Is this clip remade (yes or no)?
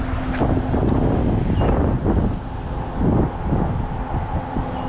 no